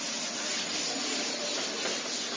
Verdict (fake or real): real